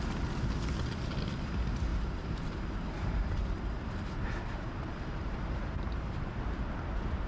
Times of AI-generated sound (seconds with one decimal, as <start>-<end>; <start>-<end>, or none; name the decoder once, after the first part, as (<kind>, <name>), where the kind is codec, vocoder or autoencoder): 1.9-6.3 (vocoder, BigVGAN v2)